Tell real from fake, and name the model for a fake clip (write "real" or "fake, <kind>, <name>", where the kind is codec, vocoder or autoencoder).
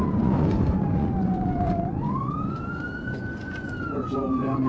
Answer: fake, vocoder, Vocos